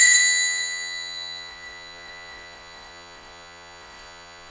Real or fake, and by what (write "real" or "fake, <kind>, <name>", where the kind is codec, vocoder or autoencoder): fake, vocoder, Vocos